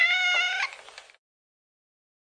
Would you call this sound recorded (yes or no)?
yes